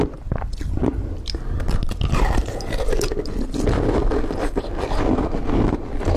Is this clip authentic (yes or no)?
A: yes